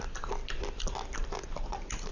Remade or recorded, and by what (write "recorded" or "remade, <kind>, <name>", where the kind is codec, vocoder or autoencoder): recorded